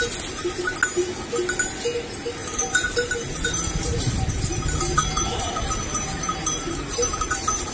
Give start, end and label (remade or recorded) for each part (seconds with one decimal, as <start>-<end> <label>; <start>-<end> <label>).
0.0-2.4 recorded; 2.4-4.3 remade; 4.3-4.9 recorded; 4.9-7.7 remade